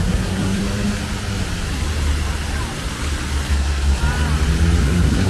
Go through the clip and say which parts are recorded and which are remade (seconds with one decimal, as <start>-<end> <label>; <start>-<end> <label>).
0.0-0.6 remade; 0.6-3.5 recorded; 3.5-4.0 remade; 4.0-4.8 recorded; 4.8-5.3 remade